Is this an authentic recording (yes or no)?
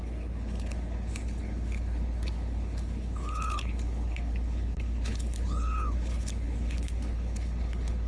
no